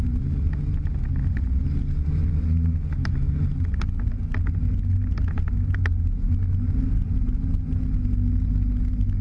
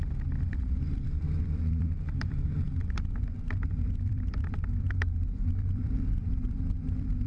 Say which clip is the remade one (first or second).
second